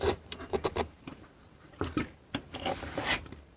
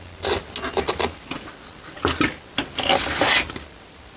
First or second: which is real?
second